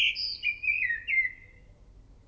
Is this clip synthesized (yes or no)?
no